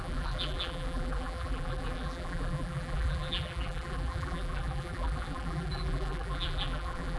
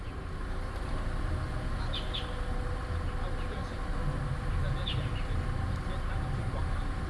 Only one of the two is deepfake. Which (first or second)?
first